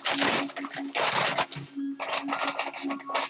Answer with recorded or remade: recorded